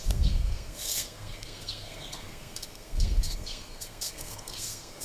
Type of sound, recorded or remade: remade